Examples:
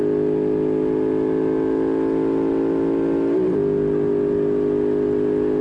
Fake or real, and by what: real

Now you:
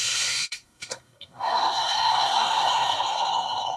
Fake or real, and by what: fake, codec, SNAC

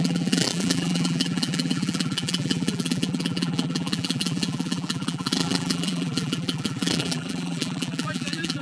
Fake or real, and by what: fake, vocoder, BigVGAN v2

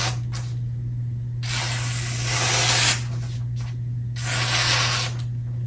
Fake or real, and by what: real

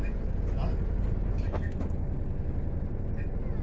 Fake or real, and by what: real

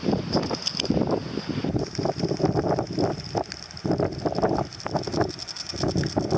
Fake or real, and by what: real